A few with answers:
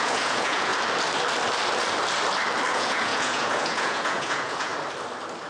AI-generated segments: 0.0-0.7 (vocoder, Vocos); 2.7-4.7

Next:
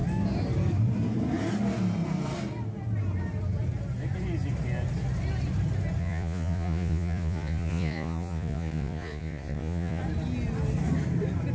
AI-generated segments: 6.0-10.0 (vocoder, Vocos)

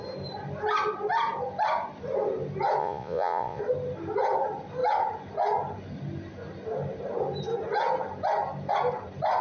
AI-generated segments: 2.8-3.6 (vocoder, Vocos)

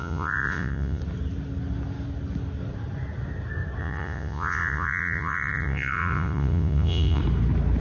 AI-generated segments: 0.0-1.0 (vocoder, Vocos); 3.8-7.2

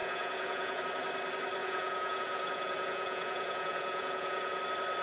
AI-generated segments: 0.0-0.8 (vocoder, Vocos); 1.6-4.6